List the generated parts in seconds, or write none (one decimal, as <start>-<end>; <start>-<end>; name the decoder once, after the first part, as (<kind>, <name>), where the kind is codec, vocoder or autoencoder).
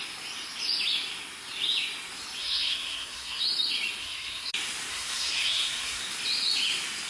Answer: 2.4-3.4 (codec, SNAC); 4.0-4.5; 4.9-6.0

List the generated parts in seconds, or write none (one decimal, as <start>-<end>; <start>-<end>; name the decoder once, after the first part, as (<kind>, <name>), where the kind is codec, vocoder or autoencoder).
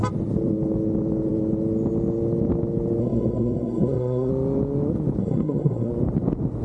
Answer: 3.0-4.3 (codec, SNAC); 5.2-5.9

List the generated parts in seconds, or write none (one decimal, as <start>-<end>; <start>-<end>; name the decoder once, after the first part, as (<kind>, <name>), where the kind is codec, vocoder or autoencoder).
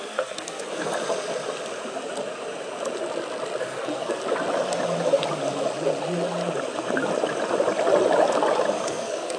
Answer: 0.0-0.9 (codec, SNAC); 3.6-4.2; 8.9-9.4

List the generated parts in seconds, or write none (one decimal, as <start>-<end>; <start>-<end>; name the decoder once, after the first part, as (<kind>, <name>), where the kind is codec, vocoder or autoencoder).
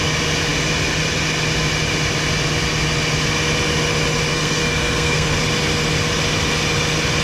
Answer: 4.3-5.4 (codec, SNAC)